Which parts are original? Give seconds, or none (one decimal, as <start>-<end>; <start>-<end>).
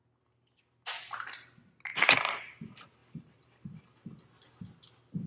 0.0-5.3